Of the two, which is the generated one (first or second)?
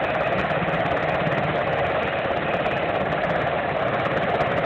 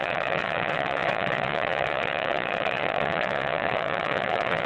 second